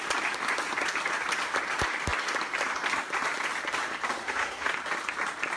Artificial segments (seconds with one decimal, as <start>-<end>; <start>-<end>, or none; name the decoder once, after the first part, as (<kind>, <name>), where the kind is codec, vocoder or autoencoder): 4.2-4.7 (codec, SNAC)